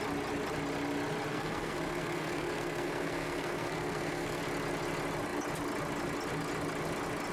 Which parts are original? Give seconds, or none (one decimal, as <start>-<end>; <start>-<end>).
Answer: 0.0-1.3; 4.4-7.3